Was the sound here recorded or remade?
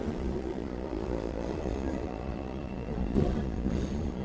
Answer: remade